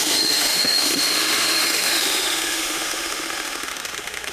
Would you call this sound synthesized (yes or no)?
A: yes